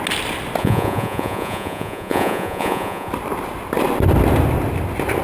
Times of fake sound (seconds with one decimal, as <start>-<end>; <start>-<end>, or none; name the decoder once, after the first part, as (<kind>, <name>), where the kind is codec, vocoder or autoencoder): 0.6-3.1 (vocoder, Vocos)